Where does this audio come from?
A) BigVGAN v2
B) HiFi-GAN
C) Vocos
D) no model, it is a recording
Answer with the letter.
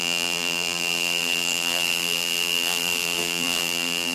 A